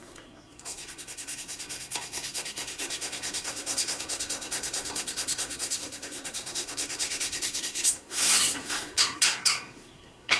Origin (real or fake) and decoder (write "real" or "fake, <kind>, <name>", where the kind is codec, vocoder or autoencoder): fake, codec, SNAC